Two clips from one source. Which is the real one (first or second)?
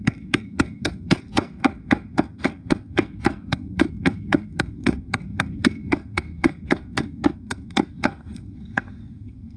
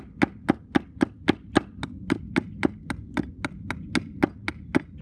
second